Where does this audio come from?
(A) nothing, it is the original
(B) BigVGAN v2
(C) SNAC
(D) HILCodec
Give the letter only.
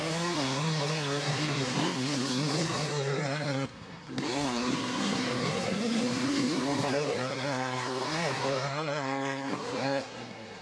C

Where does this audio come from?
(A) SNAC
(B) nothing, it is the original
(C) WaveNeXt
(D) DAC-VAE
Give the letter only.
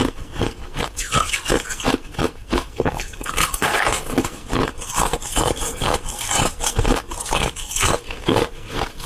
A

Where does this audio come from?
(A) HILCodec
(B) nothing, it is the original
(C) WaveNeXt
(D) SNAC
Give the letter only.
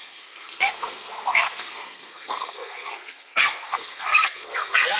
D